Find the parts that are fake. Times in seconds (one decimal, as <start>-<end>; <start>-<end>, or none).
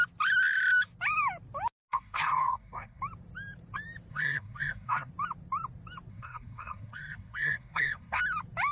1.9-3.0; 4.1-5.1; 6.1-8.2